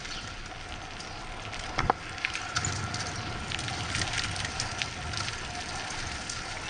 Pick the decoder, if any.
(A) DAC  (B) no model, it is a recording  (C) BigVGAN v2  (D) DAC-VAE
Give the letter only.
B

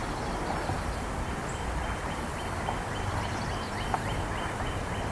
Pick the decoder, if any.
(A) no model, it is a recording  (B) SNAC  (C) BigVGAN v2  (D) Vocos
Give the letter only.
A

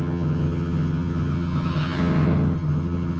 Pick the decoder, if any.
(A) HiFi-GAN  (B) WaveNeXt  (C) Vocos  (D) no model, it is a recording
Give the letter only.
A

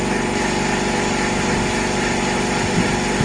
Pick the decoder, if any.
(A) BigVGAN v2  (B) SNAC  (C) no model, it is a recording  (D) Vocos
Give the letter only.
C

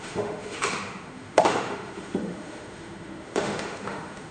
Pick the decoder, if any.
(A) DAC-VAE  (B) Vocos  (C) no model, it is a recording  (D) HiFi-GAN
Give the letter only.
A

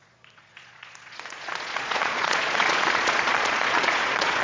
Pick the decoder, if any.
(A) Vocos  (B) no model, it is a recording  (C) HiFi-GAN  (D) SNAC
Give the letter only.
A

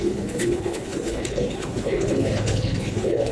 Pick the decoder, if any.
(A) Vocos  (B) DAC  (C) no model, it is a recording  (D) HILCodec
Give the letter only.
D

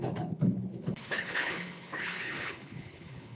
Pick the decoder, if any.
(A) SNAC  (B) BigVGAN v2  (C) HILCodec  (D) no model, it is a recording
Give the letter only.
C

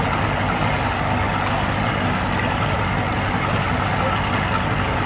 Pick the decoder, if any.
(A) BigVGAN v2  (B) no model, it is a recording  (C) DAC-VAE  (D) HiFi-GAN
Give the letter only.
B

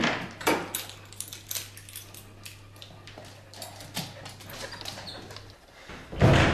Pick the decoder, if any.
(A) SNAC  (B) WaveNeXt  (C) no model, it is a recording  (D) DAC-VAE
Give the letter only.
C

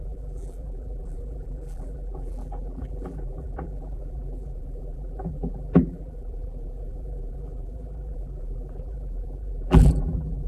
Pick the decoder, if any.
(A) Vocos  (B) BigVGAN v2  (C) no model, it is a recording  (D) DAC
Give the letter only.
B